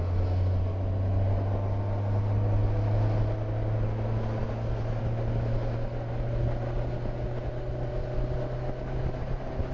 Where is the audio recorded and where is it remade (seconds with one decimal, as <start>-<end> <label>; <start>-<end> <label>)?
0.0-9.7 recorded